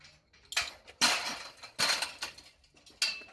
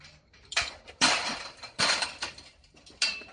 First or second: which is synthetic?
second